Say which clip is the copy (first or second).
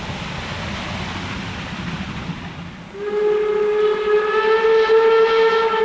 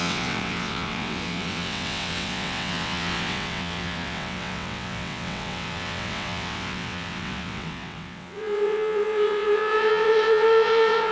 second